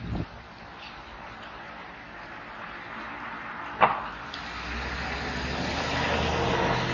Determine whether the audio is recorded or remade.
recorded